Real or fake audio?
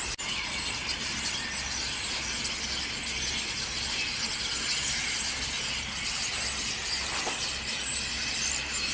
real